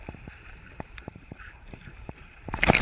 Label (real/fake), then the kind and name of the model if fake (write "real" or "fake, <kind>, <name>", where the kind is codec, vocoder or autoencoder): fake, vocoder, BigVGAN v2